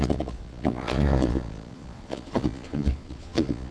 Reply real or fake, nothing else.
fake